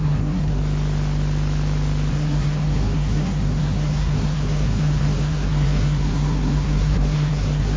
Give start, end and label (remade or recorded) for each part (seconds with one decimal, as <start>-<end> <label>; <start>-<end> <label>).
0.0-0.6 remade; 0.6-2.1 recorded; 2.1-7.8 remade